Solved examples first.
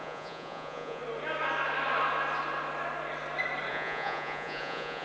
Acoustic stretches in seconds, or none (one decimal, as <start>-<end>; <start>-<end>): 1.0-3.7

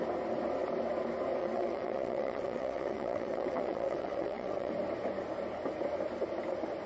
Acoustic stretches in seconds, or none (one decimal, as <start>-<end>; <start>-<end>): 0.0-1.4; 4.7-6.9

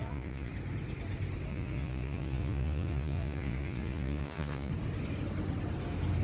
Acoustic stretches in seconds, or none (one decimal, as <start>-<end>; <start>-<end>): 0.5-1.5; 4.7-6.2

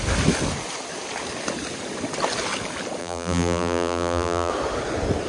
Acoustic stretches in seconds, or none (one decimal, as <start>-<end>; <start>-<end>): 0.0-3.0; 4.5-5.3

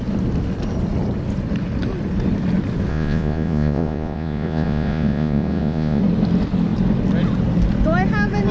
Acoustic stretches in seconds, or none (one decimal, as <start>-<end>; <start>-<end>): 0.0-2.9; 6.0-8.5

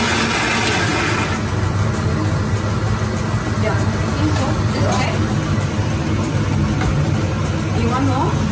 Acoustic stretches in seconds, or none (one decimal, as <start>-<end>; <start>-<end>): 0.0-8.5

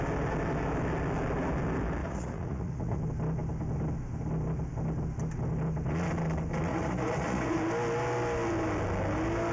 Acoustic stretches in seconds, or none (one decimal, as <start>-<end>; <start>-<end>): 0.0-2.0; 3.0-6.7; 7.6-9.5

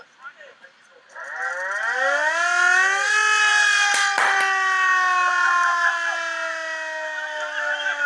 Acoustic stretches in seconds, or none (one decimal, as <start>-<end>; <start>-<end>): 0.0-8.1